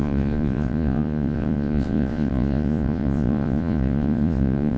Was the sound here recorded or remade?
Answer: remade